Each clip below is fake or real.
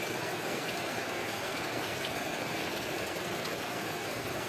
fake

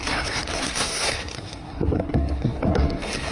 fake